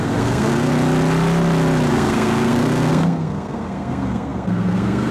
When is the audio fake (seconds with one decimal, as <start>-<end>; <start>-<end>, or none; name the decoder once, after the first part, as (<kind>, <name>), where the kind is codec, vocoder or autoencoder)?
0.0-0.7 (codec, SNAC); 1.9-5.1